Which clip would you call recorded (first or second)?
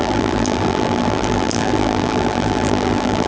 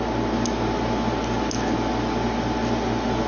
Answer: second